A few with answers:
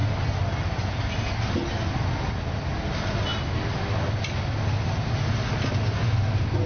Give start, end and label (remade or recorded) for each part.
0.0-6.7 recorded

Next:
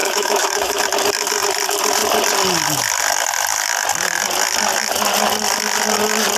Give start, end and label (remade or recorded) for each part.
0.0-0.8 remade; 0.8-6.4 recorded

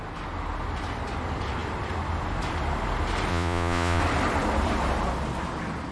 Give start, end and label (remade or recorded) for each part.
0.0-3.3 recorded; 3.3-4.0 remade; 4.0-5.9 recorded

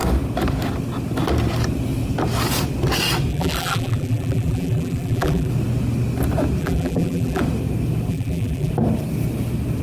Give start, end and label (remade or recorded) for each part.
0.0-3.3 recorded; 3.3-5.5 remade; 5.5-6.6 recorded; 6.6-7.4 remade; 7.4-8.1 recorded; 8.1-8.7 remade; 8.7-9.8 recorded